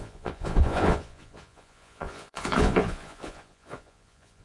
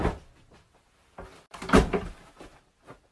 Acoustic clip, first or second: second